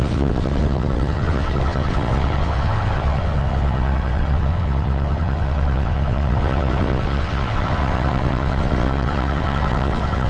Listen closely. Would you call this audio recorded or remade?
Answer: remade